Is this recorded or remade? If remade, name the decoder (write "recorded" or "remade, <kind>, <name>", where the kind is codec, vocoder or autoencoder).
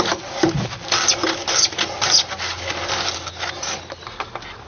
recorded